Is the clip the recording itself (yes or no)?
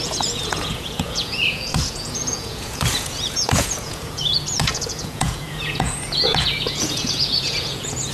no